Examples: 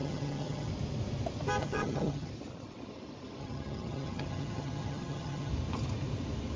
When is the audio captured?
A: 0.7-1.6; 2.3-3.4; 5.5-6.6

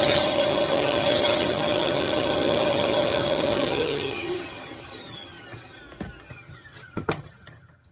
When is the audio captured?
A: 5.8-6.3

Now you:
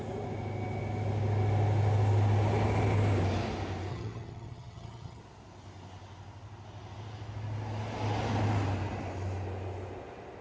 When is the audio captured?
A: 0.0-3.9; 5.2-10.4

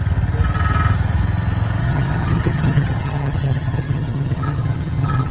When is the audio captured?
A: 0.0-1.8

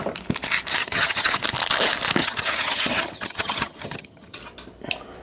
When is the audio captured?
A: 0.0-0.8; 1.4-2.2; 4.4-5.2

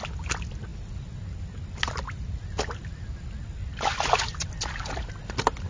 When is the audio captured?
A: 0.0-5.7

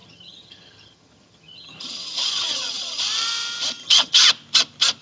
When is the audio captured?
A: 3.0-3.8; 4.3-5.0

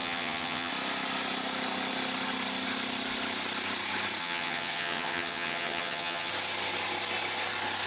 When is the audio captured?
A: 0.7-4.2; 6.3-7.9